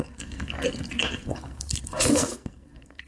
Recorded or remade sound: remade